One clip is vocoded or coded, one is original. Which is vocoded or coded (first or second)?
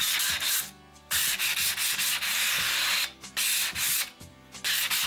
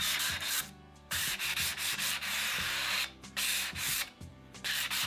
second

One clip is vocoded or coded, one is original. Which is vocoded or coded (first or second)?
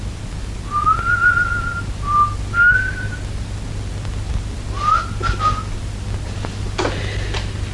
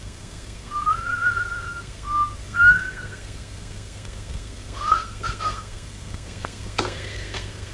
second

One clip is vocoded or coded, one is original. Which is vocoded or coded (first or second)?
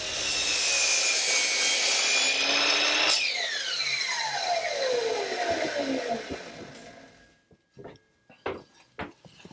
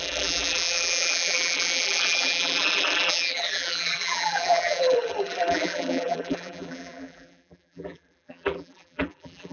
second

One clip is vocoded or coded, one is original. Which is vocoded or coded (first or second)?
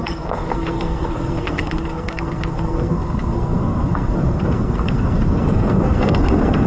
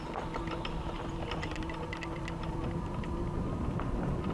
first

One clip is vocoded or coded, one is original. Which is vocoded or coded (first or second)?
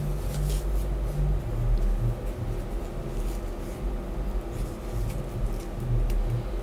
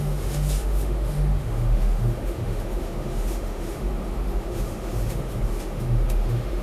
second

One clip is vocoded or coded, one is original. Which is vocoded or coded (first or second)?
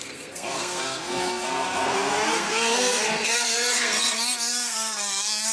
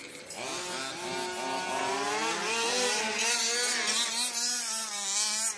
first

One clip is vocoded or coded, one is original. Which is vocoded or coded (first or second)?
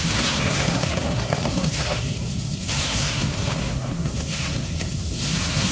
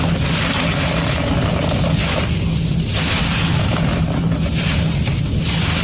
first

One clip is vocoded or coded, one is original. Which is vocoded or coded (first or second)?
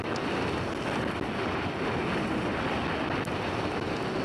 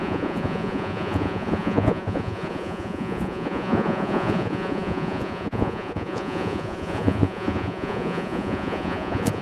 second